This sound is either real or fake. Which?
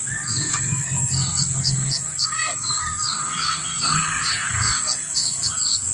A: fake